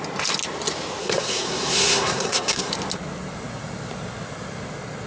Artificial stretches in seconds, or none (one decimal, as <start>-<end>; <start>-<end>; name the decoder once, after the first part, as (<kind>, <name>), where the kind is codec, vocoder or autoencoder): 1.0-2.7 (codec, SNAC)